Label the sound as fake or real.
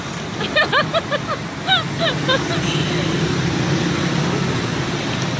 real